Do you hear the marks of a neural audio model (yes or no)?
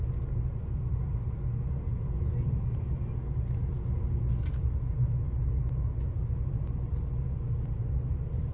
no